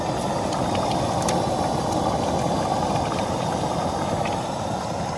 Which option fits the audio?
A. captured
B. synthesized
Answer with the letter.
A